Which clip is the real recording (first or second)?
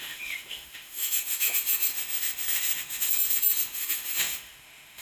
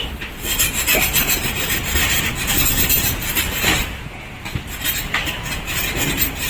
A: second